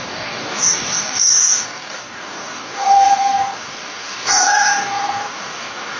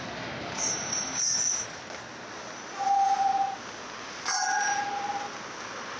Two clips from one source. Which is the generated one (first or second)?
first